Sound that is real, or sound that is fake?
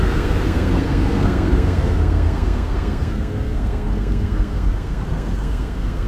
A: fake